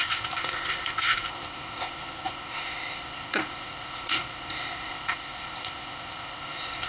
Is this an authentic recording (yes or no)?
no